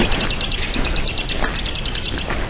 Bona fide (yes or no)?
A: yes